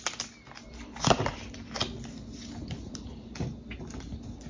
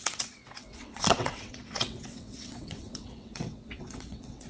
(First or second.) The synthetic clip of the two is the second